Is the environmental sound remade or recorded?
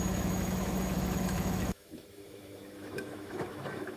remade